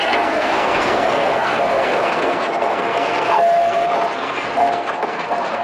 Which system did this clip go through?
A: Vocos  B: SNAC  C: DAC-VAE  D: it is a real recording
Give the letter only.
B